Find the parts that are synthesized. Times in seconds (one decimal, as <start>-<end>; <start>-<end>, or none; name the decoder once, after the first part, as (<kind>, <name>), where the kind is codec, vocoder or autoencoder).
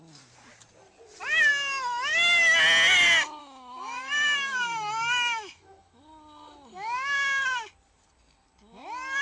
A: 3.4-6.0 (autoencoder, DAC-VAE)